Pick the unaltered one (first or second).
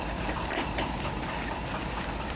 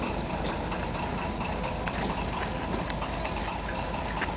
second